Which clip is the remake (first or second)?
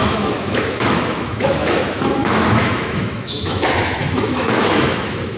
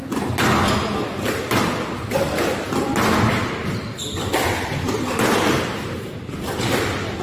first